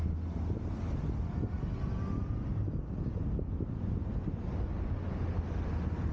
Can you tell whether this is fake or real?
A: real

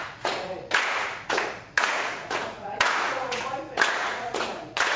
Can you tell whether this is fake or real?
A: fake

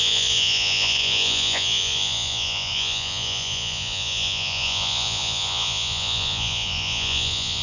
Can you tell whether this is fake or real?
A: fake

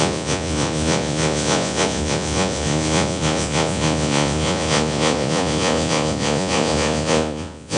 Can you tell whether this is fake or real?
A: fake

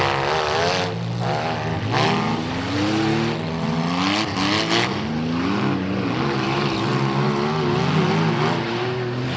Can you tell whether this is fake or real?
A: real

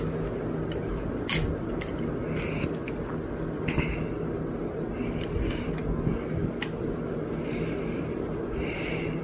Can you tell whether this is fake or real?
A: real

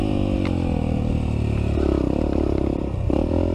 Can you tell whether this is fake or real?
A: real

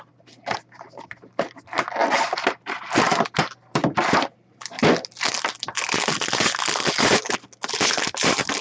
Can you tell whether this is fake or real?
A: real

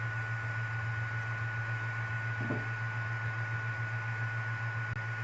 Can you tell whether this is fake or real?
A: real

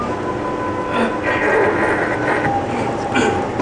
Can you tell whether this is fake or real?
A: real